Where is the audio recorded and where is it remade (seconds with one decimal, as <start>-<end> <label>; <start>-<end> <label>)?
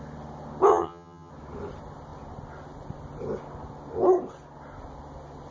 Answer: 0.0-0.7 recorded; 0.7-1.3 remade; 1.3-5.5 recorded